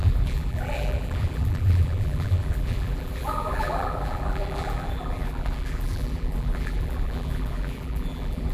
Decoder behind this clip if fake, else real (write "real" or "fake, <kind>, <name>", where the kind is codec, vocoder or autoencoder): fake, vocoder, BigVGAN v2